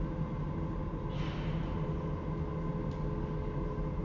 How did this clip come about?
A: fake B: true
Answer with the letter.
B